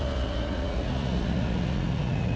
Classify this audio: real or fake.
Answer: fake